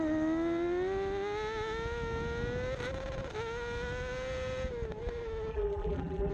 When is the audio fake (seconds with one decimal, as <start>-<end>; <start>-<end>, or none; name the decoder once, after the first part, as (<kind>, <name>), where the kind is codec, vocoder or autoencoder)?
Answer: 5.5-6.3 (vocoder, BigVGAN v2)